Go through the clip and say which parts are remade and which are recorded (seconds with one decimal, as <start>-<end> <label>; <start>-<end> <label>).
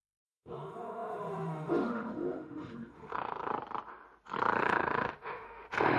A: 0.0-3.5 remade; 3.5-4.6 recorded; 4.6-6.0 remade